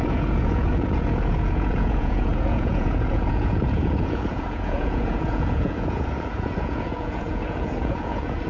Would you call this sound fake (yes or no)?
yes